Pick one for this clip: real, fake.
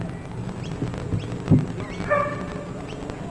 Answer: real